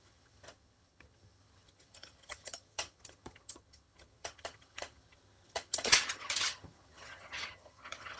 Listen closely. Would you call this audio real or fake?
fake